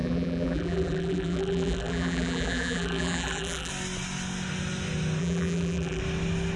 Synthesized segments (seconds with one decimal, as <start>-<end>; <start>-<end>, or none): 0.0-3.7; 5.2-6.0